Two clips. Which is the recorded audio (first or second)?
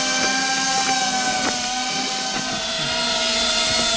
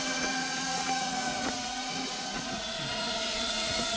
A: first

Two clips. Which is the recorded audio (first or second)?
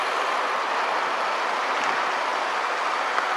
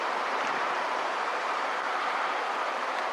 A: first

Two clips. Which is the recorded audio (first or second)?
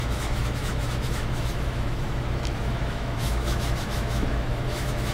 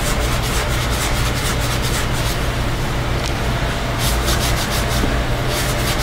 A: second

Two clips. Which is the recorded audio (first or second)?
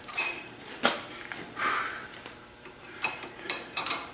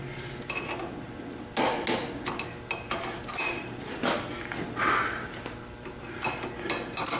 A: second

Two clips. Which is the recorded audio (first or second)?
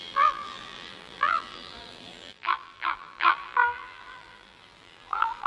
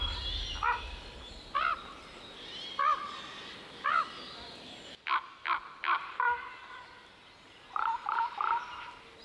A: second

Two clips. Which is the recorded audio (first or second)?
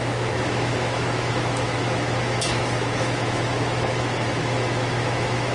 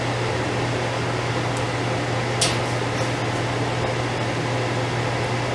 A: second